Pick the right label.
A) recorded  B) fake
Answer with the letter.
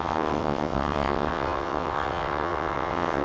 B